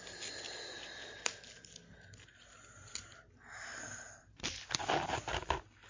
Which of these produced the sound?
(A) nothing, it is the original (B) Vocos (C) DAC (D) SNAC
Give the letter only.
A